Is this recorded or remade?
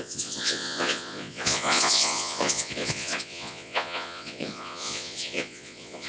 remade